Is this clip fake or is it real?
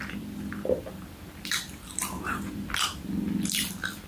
real